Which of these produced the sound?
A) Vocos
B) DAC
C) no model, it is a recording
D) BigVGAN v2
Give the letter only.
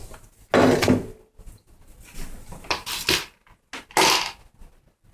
C